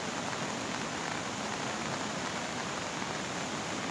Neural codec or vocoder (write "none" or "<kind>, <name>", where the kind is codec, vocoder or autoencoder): none